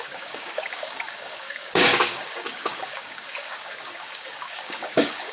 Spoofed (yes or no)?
yes